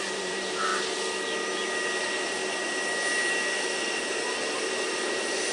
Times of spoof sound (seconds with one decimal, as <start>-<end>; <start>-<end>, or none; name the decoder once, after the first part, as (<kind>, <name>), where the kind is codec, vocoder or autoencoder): 0.0-0.7 (vocoder, BigVGAN v2); 2.0-2.4; 4.6-5.5